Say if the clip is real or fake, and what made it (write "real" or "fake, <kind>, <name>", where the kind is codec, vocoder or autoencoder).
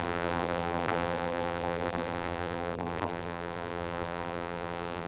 fake, vocoder, BigVGAN v2